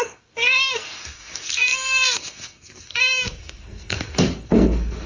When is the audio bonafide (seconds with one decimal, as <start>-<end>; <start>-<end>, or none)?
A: none